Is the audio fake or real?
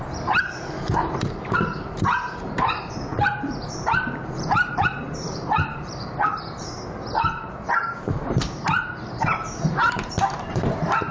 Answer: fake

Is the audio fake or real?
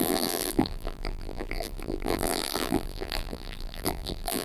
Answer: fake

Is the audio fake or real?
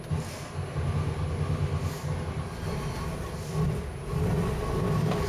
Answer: real